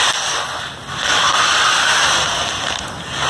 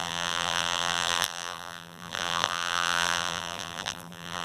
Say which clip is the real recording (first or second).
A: first